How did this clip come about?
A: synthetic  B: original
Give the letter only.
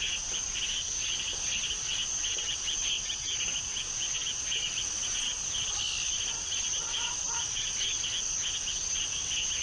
B